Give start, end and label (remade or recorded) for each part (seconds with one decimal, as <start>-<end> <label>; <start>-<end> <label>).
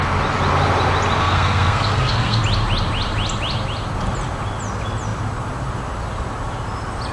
0.0-1.2 recorded; 1.2-2.4 remade; 2.4-7.1 recorded